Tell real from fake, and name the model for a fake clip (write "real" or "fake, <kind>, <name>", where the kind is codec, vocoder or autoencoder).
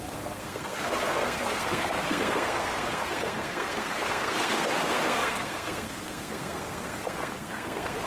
fake, codec, SNAC